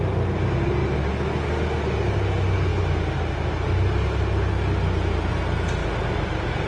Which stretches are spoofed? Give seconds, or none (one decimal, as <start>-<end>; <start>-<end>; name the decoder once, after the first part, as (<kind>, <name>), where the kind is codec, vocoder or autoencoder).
none